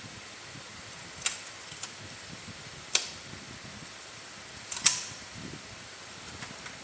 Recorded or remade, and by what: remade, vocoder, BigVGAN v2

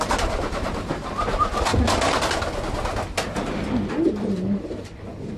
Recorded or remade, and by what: recorded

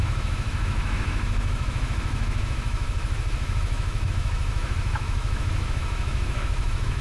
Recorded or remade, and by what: remade, autoencoder, DAC-VAE